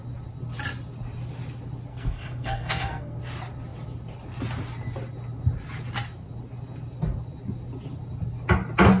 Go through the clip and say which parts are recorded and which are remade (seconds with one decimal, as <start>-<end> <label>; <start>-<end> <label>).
0.0-1.9 recorded; 1.9-3.2 remade; 3.2-9.0 recorded